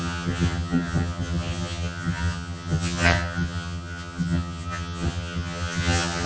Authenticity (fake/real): fake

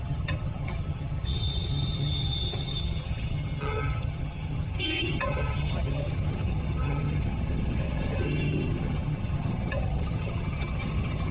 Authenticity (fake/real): fake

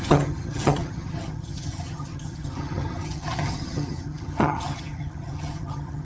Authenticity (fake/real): fake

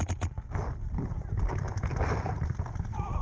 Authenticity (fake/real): real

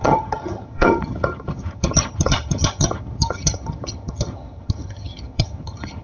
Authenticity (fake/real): fake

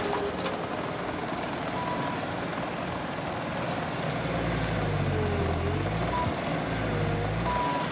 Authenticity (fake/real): real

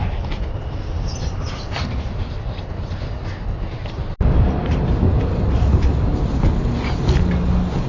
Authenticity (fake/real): real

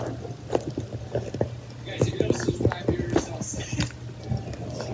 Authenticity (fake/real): real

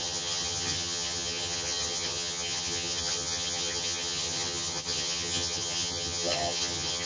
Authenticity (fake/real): fake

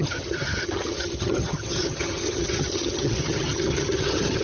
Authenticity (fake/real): fake